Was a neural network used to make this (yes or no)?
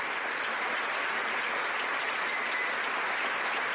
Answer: no